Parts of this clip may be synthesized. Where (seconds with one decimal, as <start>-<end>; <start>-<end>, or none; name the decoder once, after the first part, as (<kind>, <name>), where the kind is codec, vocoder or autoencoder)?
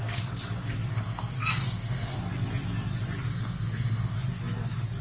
0.9-2.2 (codec, SNAC); 3.3-4.1